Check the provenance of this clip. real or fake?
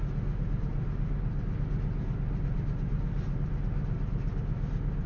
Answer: real